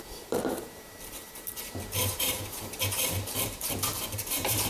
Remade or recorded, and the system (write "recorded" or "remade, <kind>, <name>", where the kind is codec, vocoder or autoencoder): remade, vocoder, BigVGAN v2